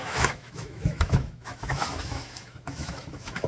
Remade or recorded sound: remade